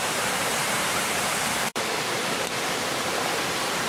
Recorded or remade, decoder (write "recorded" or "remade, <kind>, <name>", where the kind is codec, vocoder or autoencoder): remade, vocoder, BigVGAN v2